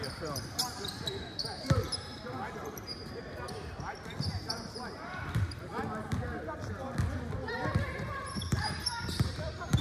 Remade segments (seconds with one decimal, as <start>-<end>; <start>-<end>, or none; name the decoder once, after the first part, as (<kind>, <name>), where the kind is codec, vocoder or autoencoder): 0.0-5.8 (vocoder, BigVGAN v2); 7.8-9.8